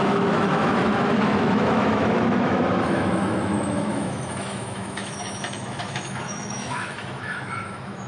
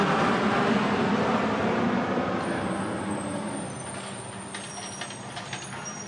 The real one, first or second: second